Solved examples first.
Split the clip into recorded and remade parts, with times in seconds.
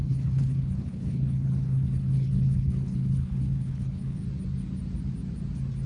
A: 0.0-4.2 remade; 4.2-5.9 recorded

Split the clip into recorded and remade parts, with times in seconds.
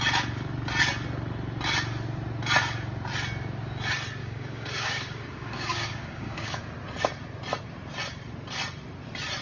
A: 0.0-4.2 recorded; 4.2-6.6 remade; 6.6-9.4 recorded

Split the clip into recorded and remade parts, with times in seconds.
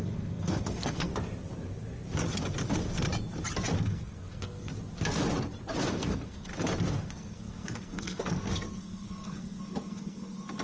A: 0.0-1.1 remade; 1.1-3.8 recorded; 3.8-4.7 remade; 4.7-5.9 recorded; 5.9-6.5 remade; 6.5-7.0 recorded; 7.0-10.6 remade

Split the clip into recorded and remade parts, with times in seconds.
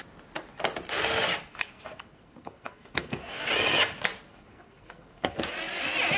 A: 0.0-1.5 recorded; 1.5-3.4 remade; 3.4-4.3 recorded; 4.3-5.4 remade; 5.4-6.2 recorded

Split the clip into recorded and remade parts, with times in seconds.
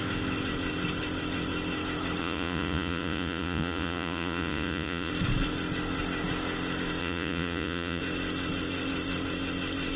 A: 0.0-2.2 recorded; 2.2-5.1 remade; 5.1-7.0 recorded; 7.0-8.0 remade; 8.0-10.0 recorded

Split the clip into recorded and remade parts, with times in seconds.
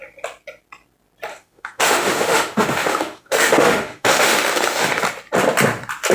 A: 0.0-1.3 recorded; 1.3-5.0 remade; 5.0-6.1 recorded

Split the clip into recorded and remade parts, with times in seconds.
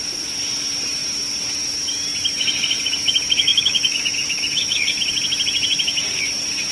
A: 0.0-3.5 recorded; 3.5-4.9 remade; 4.9-6.7 recorded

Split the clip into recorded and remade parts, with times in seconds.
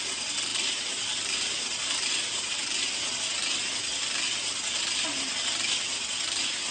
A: 0.0-6.7 recorded